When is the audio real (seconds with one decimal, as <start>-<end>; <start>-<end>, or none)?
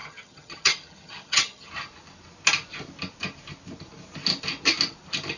1.7-5.4